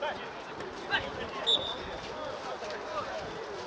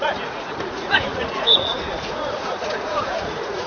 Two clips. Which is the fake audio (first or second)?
second